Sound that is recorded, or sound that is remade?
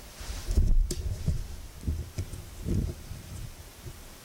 remade